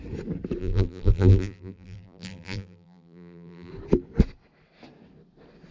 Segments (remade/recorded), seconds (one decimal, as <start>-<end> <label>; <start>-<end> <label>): 0.0-0.6 recorded; 0.6-3.7 remade; 3.7-5.7 recorded